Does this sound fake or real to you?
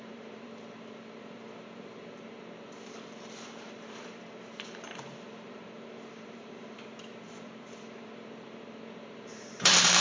fake